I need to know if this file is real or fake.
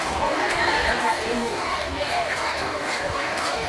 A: fake